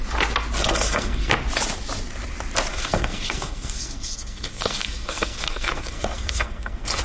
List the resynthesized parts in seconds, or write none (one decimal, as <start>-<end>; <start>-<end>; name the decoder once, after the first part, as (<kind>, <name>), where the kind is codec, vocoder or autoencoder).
0.6-1.3 (codec, SNAC); 2.7-7.0

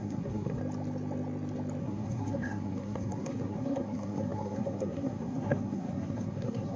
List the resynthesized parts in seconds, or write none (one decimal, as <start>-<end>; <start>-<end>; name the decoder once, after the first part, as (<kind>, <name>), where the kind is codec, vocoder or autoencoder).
0.0-0.6 (codec, SNAC); 1.8-6.8

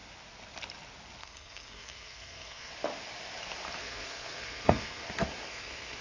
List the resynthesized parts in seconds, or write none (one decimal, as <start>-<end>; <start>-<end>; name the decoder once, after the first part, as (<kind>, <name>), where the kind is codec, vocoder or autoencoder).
1.2-2.7 (codec, SNAC); 3.8-5.0; 5.5-6.0

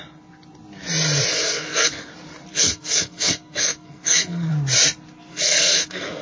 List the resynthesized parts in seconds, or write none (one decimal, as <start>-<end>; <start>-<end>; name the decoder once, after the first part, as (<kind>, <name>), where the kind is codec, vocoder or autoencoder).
1.3-2.1 (codec, SNAC); 2.5-4.5; 5.3-6.2

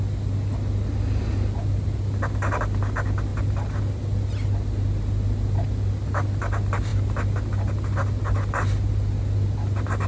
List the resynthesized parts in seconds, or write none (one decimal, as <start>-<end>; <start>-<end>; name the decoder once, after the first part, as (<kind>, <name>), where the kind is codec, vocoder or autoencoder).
none

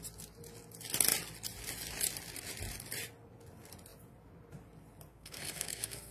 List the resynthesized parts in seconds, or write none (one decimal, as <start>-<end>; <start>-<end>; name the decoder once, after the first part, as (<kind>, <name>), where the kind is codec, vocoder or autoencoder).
5.1-6.1 (codec, SNAC)